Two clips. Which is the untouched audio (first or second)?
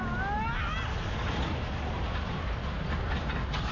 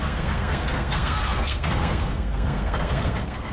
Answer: first